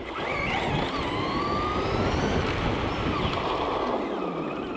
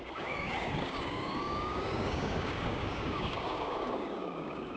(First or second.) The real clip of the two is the first